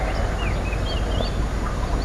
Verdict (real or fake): real